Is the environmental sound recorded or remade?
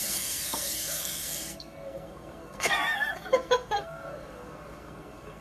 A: remade